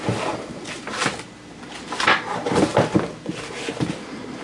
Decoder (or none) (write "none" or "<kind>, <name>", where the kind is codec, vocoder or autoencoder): none